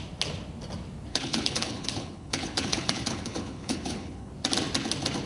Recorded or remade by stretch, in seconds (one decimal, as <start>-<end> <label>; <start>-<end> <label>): 0.0-1.1 recorded; 1.1-4.3 remade; 4.3-5.3 recorded